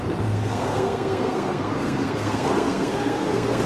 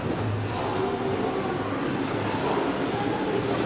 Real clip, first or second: second